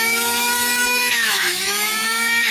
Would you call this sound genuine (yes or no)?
no